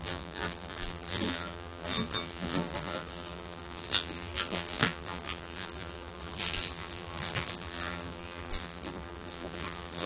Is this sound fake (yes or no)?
yes